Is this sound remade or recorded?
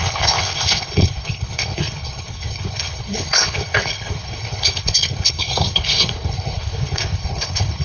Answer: remade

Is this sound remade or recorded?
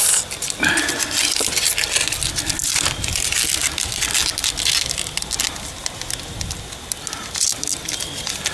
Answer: recorded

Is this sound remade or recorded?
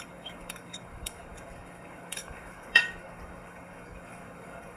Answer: remade